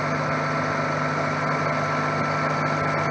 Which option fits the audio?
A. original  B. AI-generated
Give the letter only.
A